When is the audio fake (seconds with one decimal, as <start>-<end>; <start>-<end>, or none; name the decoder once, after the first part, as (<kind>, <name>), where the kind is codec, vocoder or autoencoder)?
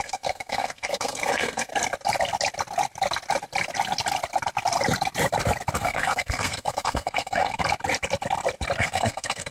0.0-1.7 (codec, SNAC); 5.8-7.6; 8.8-9.5